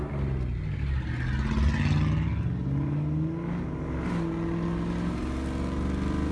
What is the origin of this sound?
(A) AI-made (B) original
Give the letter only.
B